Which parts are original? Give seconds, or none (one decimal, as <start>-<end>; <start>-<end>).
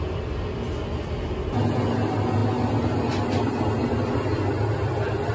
0.0-5.3